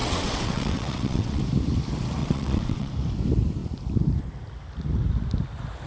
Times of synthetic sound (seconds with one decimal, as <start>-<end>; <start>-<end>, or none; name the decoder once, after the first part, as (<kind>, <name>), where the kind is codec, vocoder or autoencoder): 0.0-1.4 (vocoder, WaveNeXt); 2.2-2.9